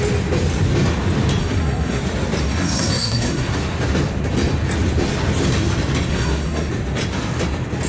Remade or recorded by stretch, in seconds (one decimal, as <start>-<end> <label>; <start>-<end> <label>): 0.0-1.4 recorded; 1.4-2.0 remade; 2.0-2.4 recorded; 2.4-3.5 remade; 3.5-6.1 recorded; 6.1-6.7 remade; 6.7-7.9 recorded